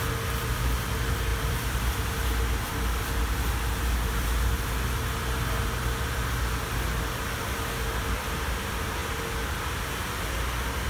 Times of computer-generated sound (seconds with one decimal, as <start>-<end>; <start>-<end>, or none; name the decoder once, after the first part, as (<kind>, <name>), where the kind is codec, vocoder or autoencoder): 1.3-1.9 (vocoder, BigVGAN v2)